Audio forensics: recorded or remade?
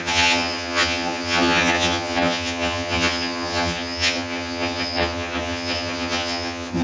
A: remade